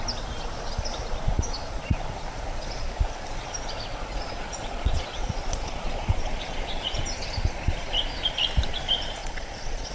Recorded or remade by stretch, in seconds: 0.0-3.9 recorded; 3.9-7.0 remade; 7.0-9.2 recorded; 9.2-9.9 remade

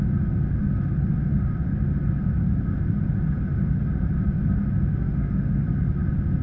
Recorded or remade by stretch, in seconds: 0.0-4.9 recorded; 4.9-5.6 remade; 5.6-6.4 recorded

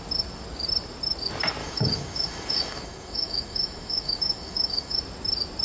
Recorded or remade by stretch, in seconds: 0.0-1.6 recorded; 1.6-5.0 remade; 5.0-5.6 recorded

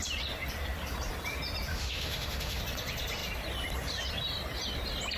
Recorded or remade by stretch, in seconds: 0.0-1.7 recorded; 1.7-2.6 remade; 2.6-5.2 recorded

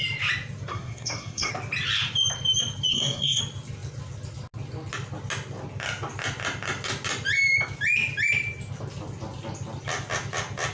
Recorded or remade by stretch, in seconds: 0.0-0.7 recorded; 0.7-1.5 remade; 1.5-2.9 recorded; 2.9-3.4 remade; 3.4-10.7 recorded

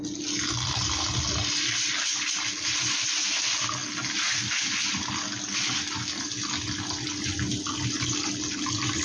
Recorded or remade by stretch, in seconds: 0.0-9.0 recorded

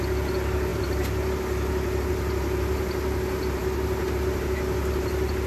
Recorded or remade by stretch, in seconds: 0.0-5.5 recorded